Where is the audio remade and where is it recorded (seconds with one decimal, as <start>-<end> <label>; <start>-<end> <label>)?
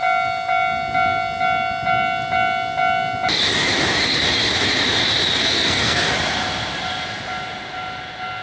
0.0-5.4 recorded; 5.4-6.1 remade; 6.1-8.4 recorded